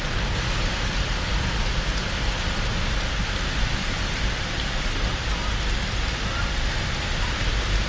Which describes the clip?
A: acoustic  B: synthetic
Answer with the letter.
A